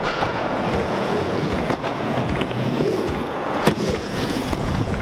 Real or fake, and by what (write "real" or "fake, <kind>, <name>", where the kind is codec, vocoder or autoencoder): fake, vocoder, Vocos